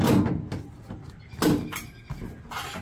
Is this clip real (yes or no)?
yes